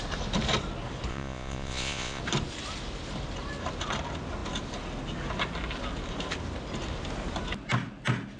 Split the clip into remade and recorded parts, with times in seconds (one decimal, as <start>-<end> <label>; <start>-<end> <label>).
0.0-1.1 recorded; 1.1-2.2 remade; 2.2-8.4 recorded